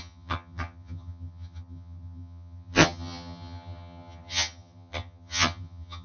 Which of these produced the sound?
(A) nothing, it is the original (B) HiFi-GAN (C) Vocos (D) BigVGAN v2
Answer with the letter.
B